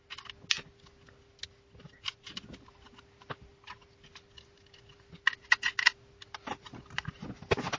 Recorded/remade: recorded